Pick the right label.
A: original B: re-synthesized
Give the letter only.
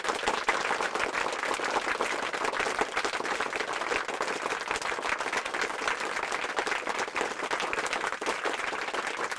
A